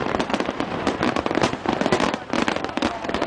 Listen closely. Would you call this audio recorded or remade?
remade